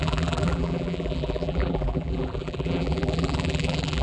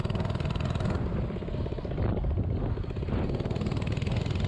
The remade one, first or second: first